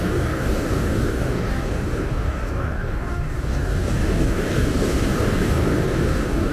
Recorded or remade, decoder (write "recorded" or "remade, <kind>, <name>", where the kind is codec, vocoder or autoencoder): remade, codec, DAC